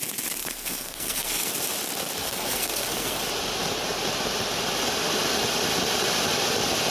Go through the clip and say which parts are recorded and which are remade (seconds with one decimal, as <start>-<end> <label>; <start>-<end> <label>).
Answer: 0.0-0.4 recorded; 0.4-1.5 remade; 1.5-2.2 recorded; 2.2-3.2 remade; 3.2-6.9 recorded